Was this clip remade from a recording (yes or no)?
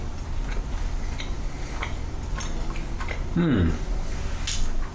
no